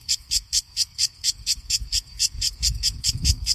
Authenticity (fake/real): fake